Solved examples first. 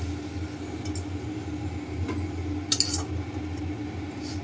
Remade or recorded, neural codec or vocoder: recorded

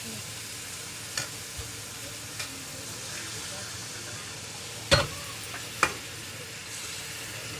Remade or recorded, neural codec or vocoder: recorded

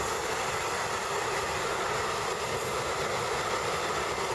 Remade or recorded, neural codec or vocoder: recorded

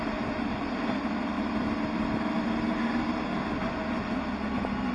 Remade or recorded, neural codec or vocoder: recorded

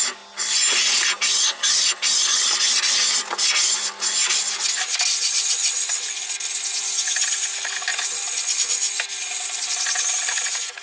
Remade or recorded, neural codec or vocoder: recorded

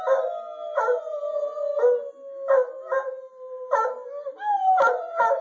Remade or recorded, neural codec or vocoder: recorded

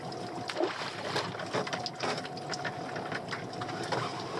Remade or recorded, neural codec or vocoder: recorded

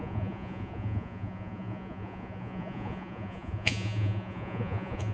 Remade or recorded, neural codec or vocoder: remade, vocoder, Vocos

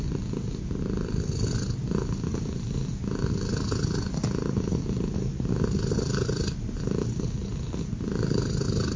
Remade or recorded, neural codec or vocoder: recorded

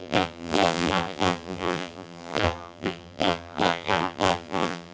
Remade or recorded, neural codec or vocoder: remade, vocoder, BigVGAN v2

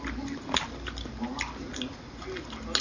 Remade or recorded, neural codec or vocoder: recorded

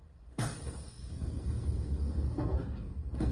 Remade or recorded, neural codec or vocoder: remade, codec, SNAC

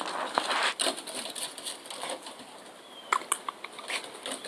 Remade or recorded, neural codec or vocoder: recorded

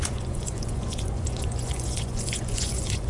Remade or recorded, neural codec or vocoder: remade, vocoder, Vocos